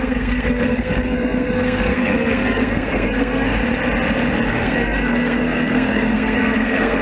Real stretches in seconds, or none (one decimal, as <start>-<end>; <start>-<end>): 3.5-4.5